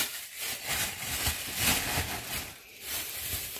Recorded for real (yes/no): no